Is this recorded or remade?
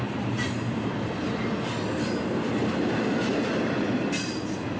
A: recorded